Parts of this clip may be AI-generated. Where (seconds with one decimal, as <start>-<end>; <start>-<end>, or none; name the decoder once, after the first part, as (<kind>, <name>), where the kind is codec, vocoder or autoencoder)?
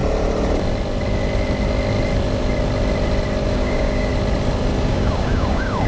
3.5-4.1 (codec, DAC); 4.9-5.9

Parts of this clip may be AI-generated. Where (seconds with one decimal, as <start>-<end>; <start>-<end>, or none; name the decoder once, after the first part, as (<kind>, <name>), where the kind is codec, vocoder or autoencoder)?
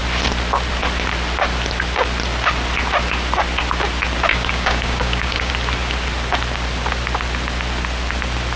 4.3-5.5 (codec, DAC)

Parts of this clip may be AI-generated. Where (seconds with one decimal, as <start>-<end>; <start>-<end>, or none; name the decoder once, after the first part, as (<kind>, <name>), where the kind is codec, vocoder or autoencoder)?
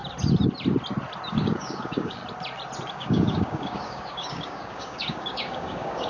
1.3-2.2 (codec, DAC); 2.9-6.1